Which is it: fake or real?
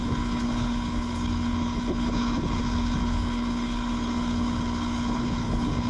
fake